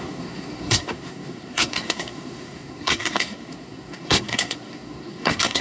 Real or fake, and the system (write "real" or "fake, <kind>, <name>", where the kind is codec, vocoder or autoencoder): fake, codec, SNAC